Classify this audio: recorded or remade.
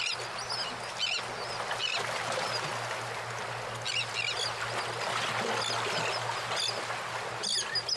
recorded